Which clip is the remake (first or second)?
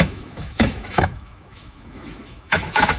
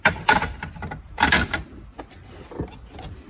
first